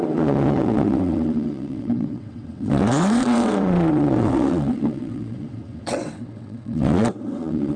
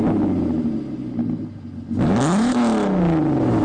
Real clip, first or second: second